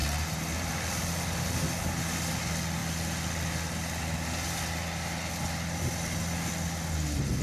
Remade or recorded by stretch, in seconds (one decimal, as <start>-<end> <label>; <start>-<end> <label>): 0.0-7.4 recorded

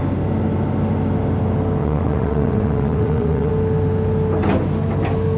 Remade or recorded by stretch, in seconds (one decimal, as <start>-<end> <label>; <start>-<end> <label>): 0.0-1.8 recorded; 1.8-3.5 remade; 3.5-5.4 recorded

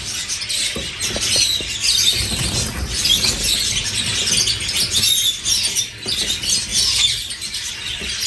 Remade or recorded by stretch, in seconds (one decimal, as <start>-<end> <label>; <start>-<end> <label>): 0.0-6.7 recorded; 6.7-7.7 remade; 7.7-8.3 recorded

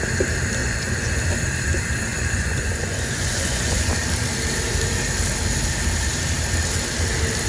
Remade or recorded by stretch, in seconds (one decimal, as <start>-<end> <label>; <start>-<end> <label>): 0.0-0.6 recorded; 0.6-1.1 remade; 1.1-2.1 recorded; 2.1-3.9 remade; 3.9-7.5 recorded

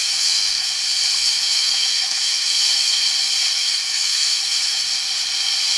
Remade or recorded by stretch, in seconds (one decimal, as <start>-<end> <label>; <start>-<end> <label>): 0.0-0.7 remade; 0.7-1.2 recorded; 1.2-3.0 remade; 3.0-3.6 recorded; 3.6-4.9 remade; 4.9-5.8 recorded

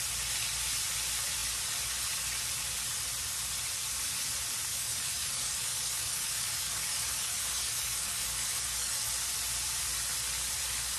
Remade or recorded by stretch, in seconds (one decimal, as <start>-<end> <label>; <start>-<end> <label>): 0.0-4.7 recorded; 4.7-9.1 remade; 9.1-11.0 recorded